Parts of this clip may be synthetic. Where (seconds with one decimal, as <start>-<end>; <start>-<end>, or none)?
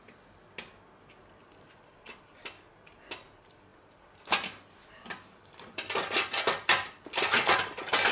none